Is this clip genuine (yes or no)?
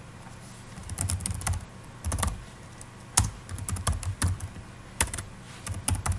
yes